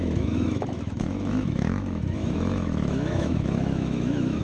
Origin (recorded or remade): remade